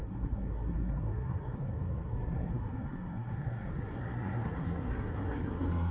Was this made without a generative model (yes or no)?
no